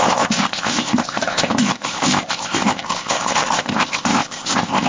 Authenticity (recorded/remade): remade